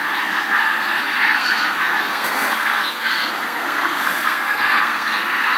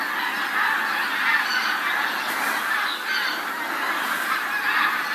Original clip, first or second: second